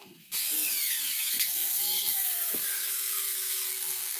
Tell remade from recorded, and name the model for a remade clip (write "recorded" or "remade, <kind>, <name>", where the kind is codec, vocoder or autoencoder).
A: remade, codec, SNAC